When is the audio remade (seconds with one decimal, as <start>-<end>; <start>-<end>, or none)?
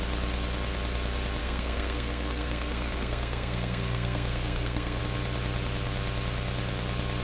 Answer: 1.4-5.0